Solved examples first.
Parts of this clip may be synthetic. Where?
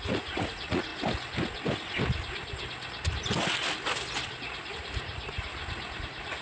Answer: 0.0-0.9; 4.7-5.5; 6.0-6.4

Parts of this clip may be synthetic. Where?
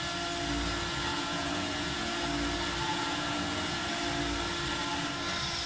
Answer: 1.1-2.2; 2.9-3.9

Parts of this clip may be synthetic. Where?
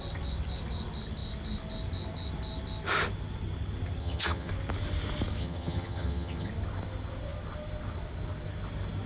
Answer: 4.0-4.5; 5.4-6.5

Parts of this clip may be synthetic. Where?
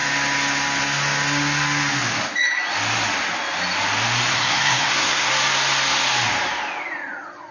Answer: 4.3-5.3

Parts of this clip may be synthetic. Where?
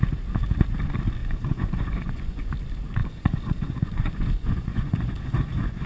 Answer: 1.2-2.5; 3.0-5.9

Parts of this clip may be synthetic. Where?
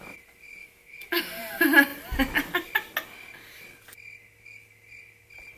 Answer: 0.6-1.2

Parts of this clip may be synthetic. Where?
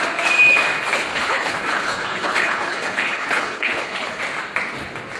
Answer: 1.1-4.2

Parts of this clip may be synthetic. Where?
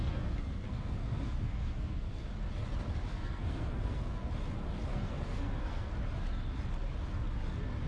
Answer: 0.0-2.3; 3.1-4.3; 4.9-5.9